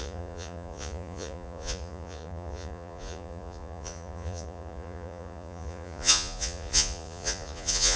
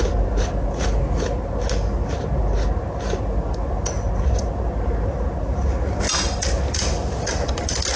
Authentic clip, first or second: second